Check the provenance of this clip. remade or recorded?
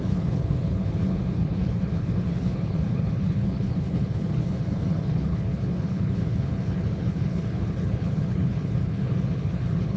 remade